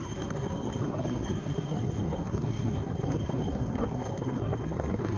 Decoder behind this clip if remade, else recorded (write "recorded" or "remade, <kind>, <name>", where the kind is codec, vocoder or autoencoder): remade, codec, SNAC